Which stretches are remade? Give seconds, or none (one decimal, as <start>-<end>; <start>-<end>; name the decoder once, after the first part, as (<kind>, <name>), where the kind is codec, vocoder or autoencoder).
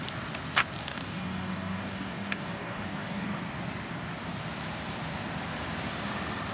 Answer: 0.8-3.4 (codec, DAC)